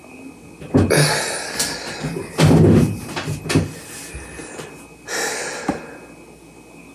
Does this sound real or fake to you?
real